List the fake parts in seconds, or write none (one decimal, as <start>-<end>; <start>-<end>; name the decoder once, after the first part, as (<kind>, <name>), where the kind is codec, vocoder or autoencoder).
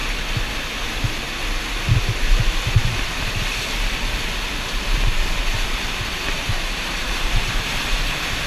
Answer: none